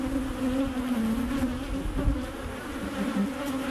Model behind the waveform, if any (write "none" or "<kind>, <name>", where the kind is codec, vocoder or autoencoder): none